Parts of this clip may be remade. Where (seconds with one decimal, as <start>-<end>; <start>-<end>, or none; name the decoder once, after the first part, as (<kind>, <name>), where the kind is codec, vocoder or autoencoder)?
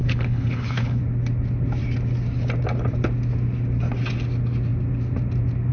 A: 0.0-1.0 (codec, HILCodec)